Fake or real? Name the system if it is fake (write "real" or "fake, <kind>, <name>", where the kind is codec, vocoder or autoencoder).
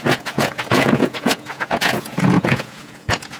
fake, vocoder, Vocos